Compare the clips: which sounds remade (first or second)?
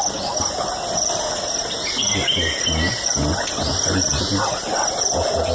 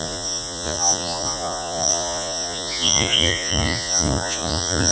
second